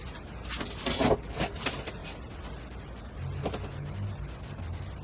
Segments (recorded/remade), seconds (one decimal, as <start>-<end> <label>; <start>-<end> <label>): 0.0-5.0 recorded